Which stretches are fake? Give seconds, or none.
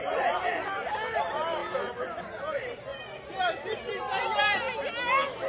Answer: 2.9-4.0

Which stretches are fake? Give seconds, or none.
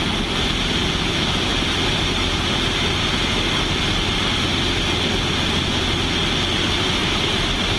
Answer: 1.5-2.1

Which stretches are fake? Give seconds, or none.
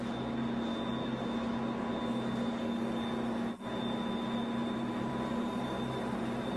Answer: 4.6-6.6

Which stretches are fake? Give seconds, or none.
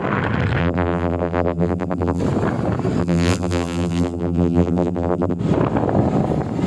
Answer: 0.6-2.2; 3.0-5.4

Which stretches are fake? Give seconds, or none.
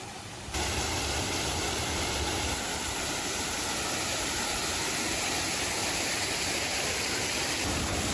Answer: 2.7-7.3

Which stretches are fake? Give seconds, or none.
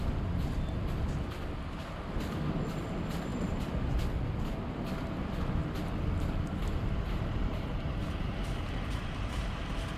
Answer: 3.3-3.9; 6.6-9.6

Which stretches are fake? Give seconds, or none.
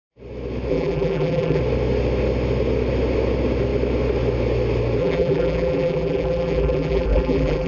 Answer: 0.7-1.6; 5.0-7.7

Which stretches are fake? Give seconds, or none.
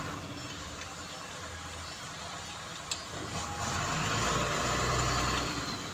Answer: none